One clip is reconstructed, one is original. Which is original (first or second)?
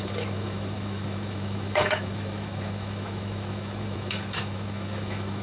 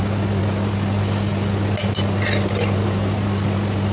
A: second